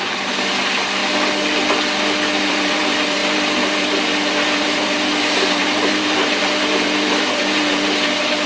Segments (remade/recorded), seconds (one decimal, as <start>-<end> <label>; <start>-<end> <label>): 0.0-1.0 remade; 1.0-2.5 recorded; 2.5-8.5 remade